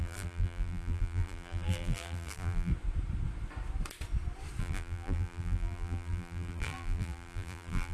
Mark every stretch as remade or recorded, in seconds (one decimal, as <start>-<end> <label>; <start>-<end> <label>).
0.0-2.7 remade; 2.7-4.6 recorded; 4.6-7.9 remade